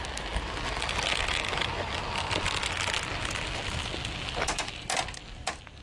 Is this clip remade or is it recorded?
recorded